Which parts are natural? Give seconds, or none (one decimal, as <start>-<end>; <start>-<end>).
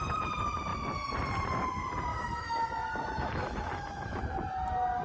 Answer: 0.0-2.1; 4.2-5.0